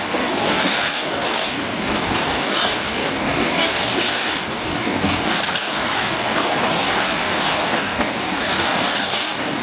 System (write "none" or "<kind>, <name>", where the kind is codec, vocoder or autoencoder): codec, DAC